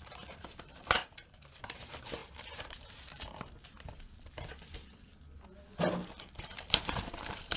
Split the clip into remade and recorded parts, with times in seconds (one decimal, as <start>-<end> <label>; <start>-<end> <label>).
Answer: 0.0-5.1 remade; 5.1-6.4 recorded; 6.4-7.6 remade